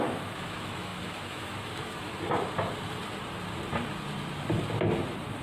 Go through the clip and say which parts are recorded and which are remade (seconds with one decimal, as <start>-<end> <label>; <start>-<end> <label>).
0.0-2.1 remade; 2.1-5.4 recorded